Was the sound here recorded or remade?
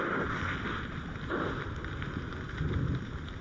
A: recorded